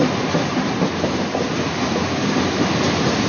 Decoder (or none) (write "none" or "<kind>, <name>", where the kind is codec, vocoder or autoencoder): none